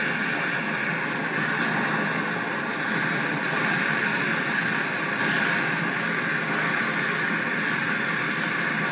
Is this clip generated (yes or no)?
no